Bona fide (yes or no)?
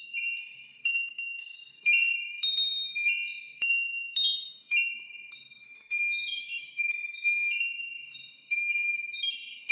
no